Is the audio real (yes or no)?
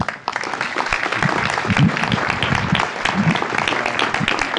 yes